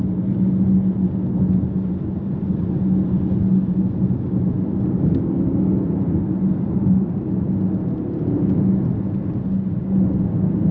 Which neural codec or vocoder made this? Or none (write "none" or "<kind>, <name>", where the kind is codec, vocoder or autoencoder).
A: none